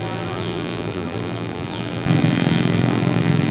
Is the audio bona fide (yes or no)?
no